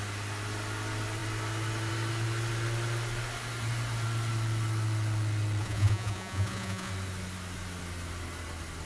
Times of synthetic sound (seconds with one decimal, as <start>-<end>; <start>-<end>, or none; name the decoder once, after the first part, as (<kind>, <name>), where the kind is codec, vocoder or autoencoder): 5.6-6.9 (vocoder, Vocos)